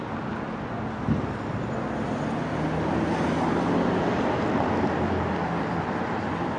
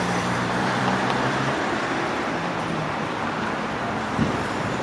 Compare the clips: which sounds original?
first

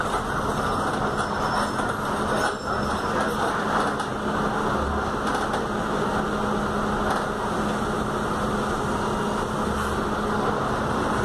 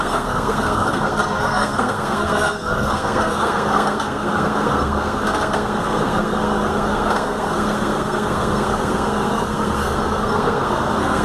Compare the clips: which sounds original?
first